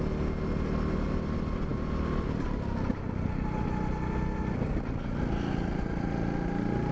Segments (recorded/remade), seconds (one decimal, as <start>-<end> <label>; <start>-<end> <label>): 0.0-6.9 recorded